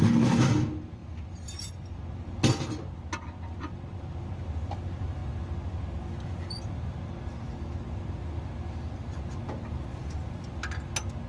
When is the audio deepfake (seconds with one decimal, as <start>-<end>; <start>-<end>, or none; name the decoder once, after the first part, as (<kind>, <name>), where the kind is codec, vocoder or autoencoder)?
none